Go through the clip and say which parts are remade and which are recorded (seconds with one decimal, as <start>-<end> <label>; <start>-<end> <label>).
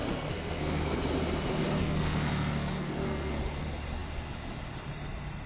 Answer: 0.0-1.0 remade; 1.0-1.8 recorded; 1.8-3.3 remade; 3.3-5.5 recorded